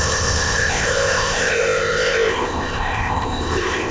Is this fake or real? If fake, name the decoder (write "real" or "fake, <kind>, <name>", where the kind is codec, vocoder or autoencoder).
fake, codec, ZipCodec